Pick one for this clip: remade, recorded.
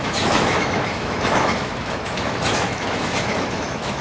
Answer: remade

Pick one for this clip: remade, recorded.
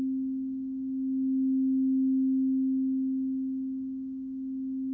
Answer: recorded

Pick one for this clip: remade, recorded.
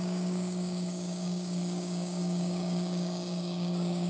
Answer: remade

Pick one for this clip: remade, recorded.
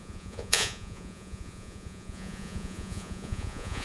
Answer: remade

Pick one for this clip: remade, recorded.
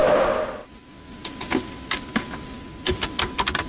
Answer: recorded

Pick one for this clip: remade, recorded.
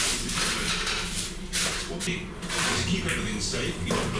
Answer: remade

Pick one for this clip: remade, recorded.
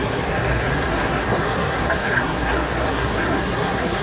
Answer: remade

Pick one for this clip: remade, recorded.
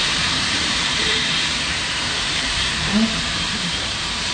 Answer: remade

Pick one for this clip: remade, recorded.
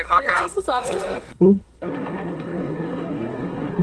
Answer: remade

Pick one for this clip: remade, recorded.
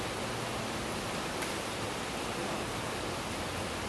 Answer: recorded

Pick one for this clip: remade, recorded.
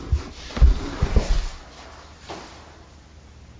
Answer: recorded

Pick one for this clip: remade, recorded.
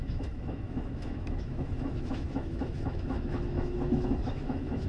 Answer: remade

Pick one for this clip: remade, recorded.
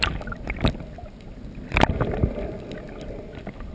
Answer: recorded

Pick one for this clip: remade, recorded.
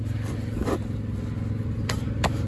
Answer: recorded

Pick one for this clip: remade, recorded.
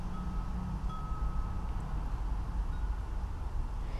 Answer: recorded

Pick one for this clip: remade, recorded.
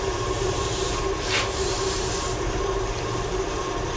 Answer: remade